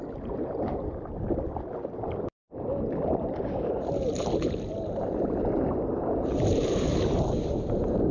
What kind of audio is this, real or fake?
fake